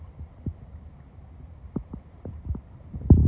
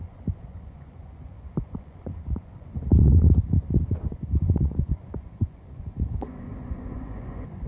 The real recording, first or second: first